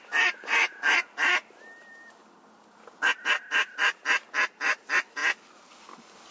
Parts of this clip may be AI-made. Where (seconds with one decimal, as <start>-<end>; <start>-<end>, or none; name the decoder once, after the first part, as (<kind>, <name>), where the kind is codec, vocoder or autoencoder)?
none